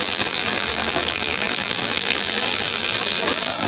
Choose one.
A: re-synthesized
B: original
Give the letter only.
A